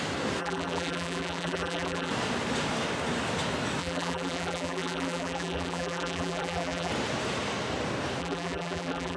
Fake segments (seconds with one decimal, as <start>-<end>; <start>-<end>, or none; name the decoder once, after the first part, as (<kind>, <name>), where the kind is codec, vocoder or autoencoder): 0.4-2.1 (vocoder, BigVGAN v2); 3.8-6.9; 8.2-9.2